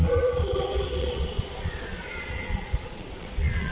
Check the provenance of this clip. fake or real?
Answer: fake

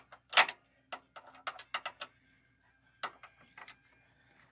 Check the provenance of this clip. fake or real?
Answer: real